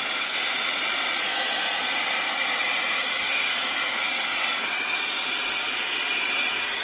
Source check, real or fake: real